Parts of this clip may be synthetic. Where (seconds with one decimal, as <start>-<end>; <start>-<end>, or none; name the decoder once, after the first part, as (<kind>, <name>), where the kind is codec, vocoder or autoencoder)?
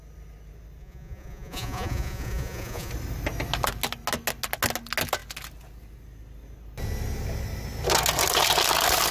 0.8-2.9 (vocoder, Vocos)